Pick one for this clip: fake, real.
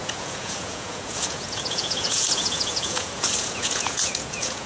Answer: fake